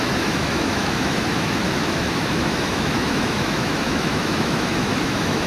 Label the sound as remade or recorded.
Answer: remade